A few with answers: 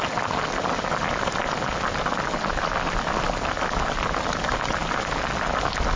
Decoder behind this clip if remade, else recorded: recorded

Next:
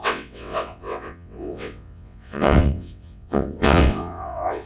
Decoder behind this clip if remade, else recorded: remade, vocoder, WaveNeXt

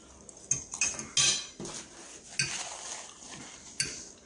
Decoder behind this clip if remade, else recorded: recorded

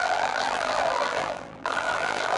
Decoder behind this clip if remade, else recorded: remade, vocoder, BigVGAN v2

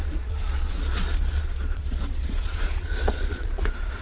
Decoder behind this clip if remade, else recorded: remade, vocoder, Vocos